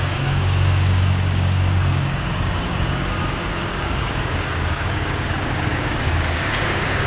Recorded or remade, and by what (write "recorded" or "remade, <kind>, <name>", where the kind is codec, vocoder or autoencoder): remade, codec, DAC